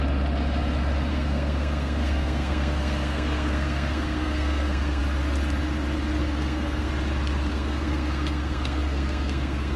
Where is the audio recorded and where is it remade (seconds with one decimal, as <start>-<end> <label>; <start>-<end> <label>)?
0.0-1.1 recorded; 1.1-5.0 remade; 5.0-6.2 recorded; 6.2-6.9 remade; 6.9-7.5 recorded; 7.5-9.8 remade